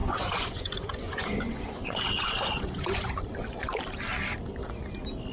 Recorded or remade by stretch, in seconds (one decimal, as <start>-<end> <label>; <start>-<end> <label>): 0.0-3.2 remade; 3.2-5.3 recorded